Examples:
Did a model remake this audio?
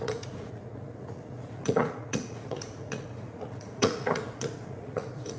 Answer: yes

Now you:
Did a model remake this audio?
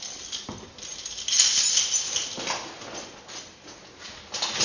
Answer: no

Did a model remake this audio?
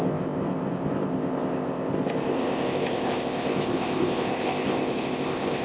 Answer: yes